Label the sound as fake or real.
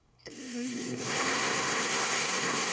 fake